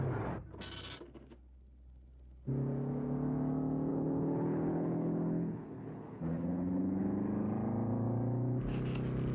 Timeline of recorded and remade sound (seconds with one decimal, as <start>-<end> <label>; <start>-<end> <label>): 0.0-3.9 recorded; 3.9-7.0 remade; 7.0-9.3 recorded